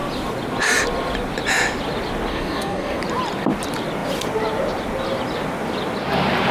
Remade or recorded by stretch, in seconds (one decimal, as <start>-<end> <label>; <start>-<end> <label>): 0.0-2.3 recorded; 2.3-3.0 remade; 3.0-6.5 recorded